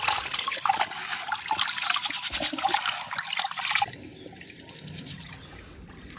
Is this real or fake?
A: real